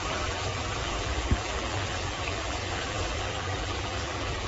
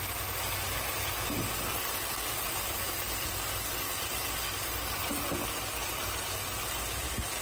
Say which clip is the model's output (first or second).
first